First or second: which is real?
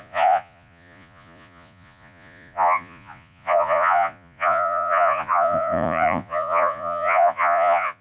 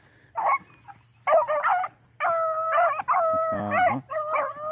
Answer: second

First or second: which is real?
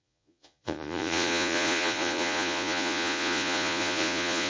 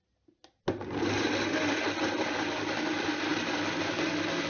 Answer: second